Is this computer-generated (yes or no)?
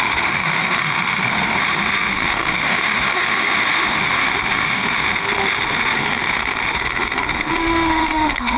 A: yes